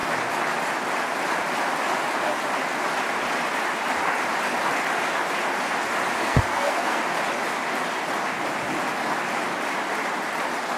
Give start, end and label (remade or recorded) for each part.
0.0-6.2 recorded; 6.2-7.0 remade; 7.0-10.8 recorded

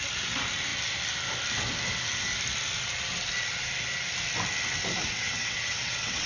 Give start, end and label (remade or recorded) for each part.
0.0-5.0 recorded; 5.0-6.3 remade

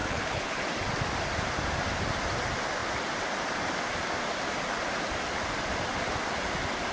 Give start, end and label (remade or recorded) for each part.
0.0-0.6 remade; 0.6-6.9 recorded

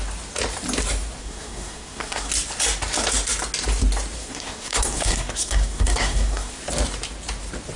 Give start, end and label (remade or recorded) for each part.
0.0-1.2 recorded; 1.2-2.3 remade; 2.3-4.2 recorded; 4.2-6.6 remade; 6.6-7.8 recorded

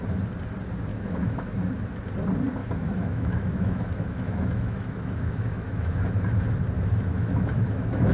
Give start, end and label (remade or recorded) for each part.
0.0-0.9 recorded; 0.9-1.7 remade; 1.7-2.6 recorded; 2.6-6.0 remade; 6.0-7.1 recorded; 7.1-8.1 remade